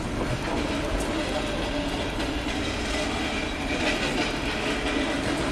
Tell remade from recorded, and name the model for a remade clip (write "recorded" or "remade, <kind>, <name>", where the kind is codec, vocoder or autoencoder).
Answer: recorded